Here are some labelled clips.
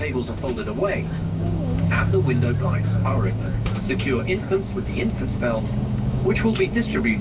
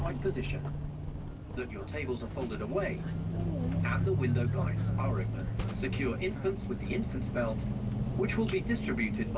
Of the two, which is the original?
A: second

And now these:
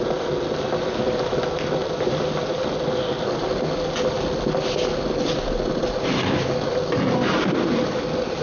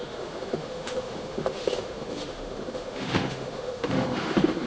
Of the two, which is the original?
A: first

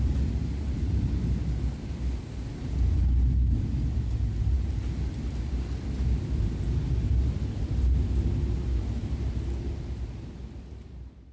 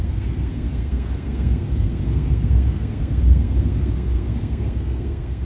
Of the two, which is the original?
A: first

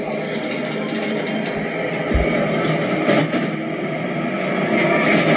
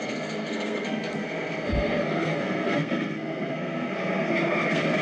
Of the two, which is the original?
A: first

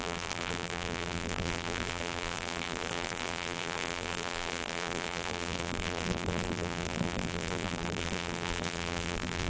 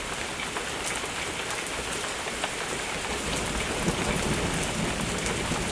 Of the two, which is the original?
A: second